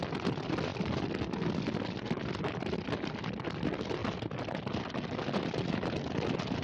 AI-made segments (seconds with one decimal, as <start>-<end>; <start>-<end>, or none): none